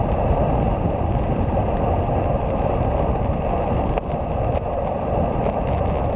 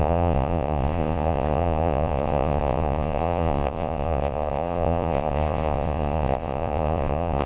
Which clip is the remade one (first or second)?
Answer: second